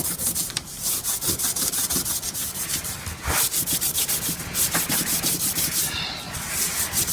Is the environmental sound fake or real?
real